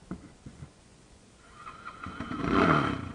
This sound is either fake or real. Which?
fake